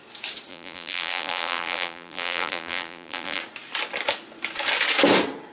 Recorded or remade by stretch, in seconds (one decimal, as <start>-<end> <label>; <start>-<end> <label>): 0.0-0.5 recorded; 0.5-3.4 remade; 3.4-5.5 recorded